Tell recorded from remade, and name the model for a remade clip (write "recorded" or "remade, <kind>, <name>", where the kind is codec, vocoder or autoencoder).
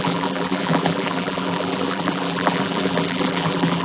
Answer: remade, vocoder, BigVGAN v2